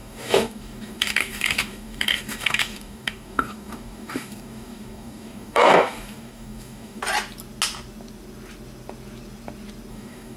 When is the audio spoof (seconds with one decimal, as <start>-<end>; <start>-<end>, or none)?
0.0-7.0; 9.9-10.4